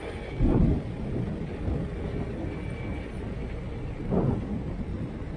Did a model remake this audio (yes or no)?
no